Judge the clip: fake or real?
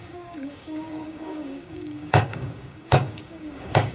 fake